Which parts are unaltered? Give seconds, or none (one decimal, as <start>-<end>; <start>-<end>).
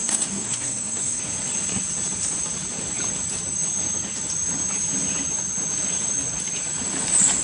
1.2-7.4